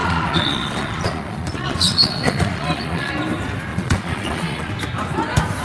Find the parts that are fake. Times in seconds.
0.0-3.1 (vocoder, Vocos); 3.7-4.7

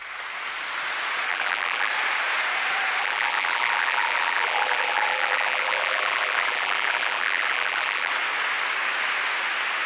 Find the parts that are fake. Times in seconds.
1.3-1.9 (vocoder, BigVGAN v2); 3.0-8.1

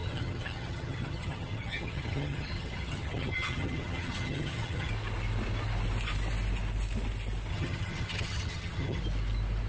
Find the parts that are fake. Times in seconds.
0.0-4.9 (vocoder, HiFi-GAN); 7.5-9.0

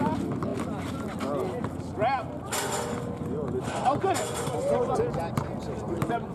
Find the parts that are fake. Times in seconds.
none

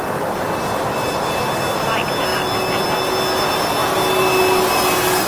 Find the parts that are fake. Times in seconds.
none

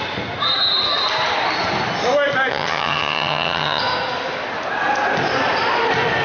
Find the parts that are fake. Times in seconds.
2.5-3.8 (vocoder, HiFi-GAN)

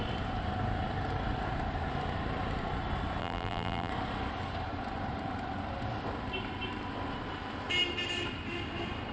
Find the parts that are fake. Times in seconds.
3.2-3.9 (vocoder, BigVGAN v2)